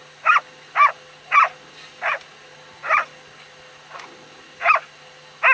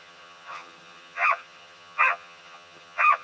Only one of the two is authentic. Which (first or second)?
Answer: first